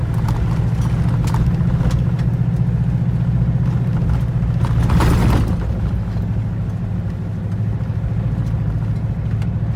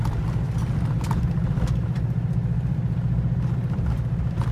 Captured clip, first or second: first